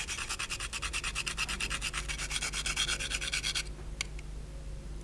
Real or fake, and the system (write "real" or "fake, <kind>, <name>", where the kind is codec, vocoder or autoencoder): real